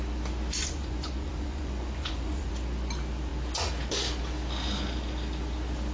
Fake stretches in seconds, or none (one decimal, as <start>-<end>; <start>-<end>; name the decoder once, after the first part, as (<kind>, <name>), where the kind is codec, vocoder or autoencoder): 0.6-2.5 (vocoder, Vocos)